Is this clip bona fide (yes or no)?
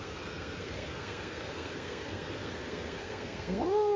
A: no